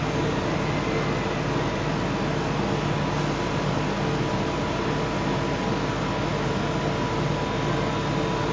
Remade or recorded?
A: recorded